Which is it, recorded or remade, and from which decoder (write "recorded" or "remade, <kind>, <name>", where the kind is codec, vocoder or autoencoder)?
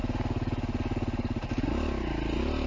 recorded